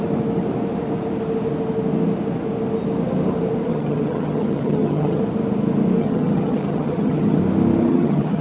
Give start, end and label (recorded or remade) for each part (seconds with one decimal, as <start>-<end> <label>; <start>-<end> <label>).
0.0-3.7 recorded; 3.7-5.2 remade; 5.2-6.0 recorded; 6.0-7.4 remade; 7.4-7.9 recorded; 7.9-8.4 remade